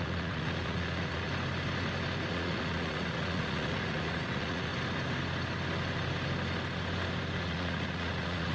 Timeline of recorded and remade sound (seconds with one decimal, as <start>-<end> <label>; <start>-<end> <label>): 0.0-1.3 remade; 1.3-2.3 recorded; 2.3-4.7 remade; 4.7-7.4 recorded; 7.4-8.5 remade